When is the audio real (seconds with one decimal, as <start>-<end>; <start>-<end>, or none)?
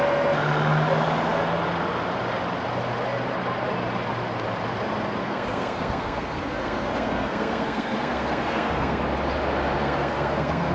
0.0-5.2; 9.0-9.8